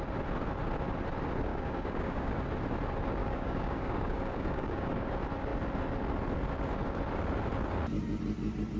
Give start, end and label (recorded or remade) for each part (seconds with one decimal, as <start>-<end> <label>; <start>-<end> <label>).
0.0-1.5 recorded; 1.5-2.3 remade; 2.3-3.2 recorded; 3.2-5.1 remade; 5.1-8.8 recorded